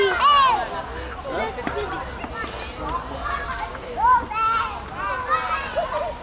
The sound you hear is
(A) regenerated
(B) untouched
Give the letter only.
B